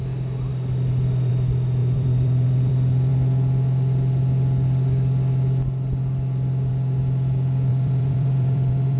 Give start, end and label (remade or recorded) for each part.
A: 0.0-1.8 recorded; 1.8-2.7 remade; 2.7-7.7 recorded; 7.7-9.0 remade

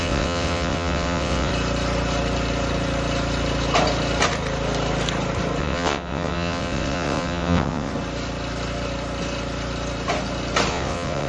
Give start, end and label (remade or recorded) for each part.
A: 0.0-1.5 remade; 1.5-5.6 recorded; 5.6-7.9 remade; 7.9-10.7 recorded; 10.7-11.3 remade

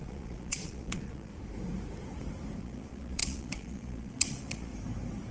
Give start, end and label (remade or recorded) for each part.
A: 0.0-1.3 remade; 1.3-2.6 recorded; 2.6-4.7 remade; 4.7-5.3 recorded

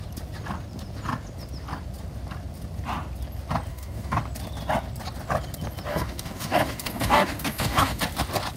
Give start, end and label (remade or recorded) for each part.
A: 0.0-3.7 recorded; 3.7-4.2 remade; 4.2-5.9 recorded; 5.9-8.0 remade; 8.0-8.6 recorded

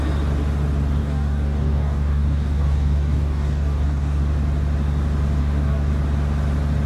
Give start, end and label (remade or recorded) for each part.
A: 0.0-1.0 recorded; 1.0-4.2 remade; 4.2-5.4 recorded; 5.4-5.9 remade; 5.9-6.9 recorded

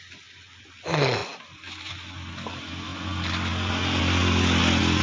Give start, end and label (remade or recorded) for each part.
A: 0.0-5.0 recorded

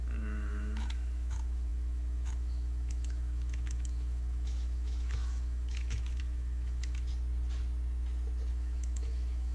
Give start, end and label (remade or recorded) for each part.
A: 0.0-7.1 remade; 7.1-8.5 recorded; 8.5-9.5 remade